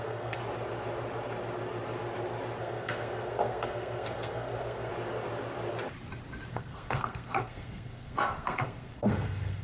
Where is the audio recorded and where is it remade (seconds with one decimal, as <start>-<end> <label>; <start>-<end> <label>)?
0.0-0.4 remade; 0.4-2.6 recorded; 2.6-4.9 remade; 4.9-6.5 recorded; 6.5-9.6 remade